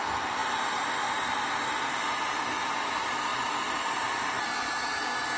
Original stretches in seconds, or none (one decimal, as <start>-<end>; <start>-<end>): 0.0-5.4